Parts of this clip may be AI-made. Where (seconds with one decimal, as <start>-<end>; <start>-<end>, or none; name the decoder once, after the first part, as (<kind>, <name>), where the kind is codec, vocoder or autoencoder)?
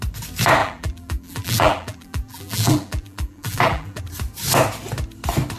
0.6-4.0 (vocoder, BigVGAN v2)